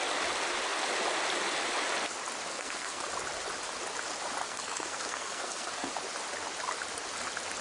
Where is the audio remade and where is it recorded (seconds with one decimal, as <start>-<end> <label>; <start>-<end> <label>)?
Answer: 0.0-2.5 recorded; 2.5-3.1 remade; 3.1-4.4 recorded; 4.4-5.9 remade; 5.9-7.6 recorded